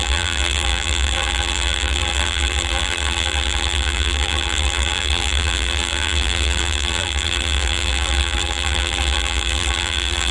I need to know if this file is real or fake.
fake